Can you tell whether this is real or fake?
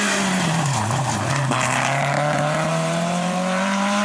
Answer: fake